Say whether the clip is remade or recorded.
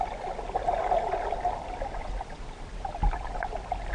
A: recorded